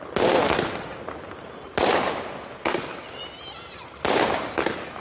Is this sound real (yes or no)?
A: yes